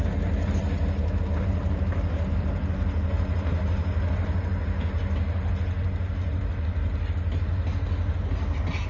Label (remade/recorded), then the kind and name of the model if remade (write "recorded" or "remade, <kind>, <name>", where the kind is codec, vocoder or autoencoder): recorded